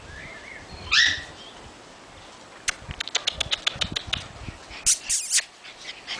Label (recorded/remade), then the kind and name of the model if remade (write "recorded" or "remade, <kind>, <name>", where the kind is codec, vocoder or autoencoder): recorded